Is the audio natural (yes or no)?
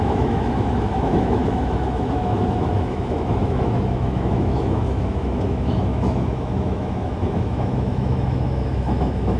no